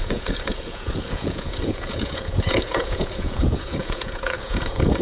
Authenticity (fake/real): fake